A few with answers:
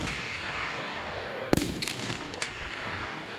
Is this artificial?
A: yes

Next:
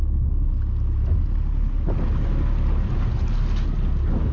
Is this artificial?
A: no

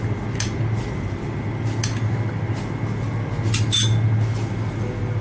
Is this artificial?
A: yes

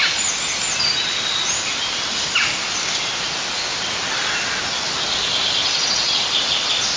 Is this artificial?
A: no